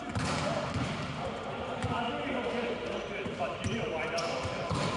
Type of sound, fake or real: real